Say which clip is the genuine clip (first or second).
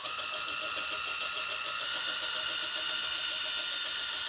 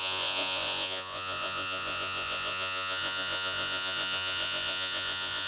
first